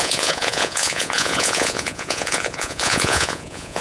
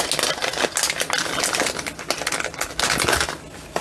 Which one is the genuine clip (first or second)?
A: second